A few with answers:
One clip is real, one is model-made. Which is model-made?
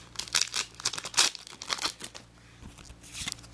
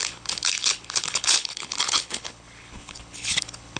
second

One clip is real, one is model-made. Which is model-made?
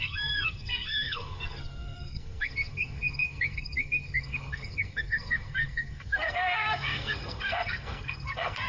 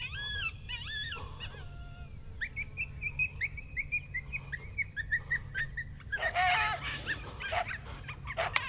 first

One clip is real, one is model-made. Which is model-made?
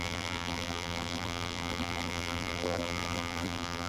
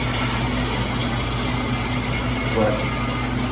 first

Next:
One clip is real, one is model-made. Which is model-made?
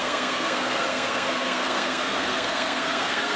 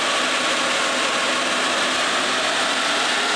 first